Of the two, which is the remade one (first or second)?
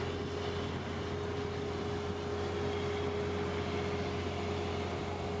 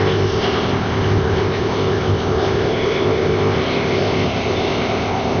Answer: second